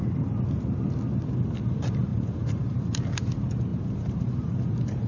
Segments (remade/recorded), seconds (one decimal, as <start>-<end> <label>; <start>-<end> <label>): 0.0-2.1 recorded; 2.1-3.0 remade; 3.0-3.7 recorded; 3.7-5.1 remade